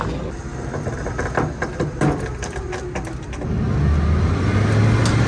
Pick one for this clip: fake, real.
real